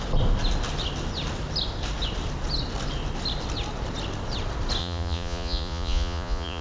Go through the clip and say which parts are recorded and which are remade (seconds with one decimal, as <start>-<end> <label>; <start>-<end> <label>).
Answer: 0.0-4.8 recorded; 4.8-6.6 remade